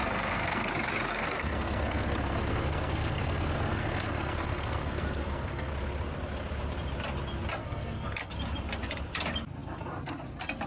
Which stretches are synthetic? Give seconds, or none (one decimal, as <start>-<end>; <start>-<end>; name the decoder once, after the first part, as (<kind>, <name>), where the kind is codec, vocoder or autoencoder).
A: 0.0-0.7 (codec, SNAC); 1.1-5.7; 7.6-8.3